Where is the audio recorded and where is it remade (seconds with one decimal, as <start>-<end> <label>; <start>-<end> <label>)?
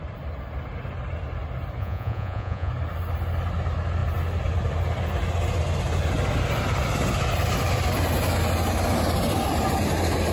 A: 0.0-1.8 recorded; 1.8-2.7 remade; 2.7-10.3 recorded